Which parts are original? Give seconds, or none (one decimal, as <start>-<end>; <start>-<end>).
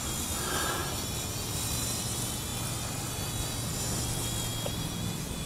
0.0-5.5